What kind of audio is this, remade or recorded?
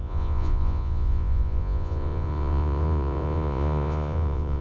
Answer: remade